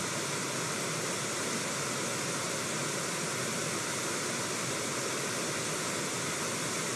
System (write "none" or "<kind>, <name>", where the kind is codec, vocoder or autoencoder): none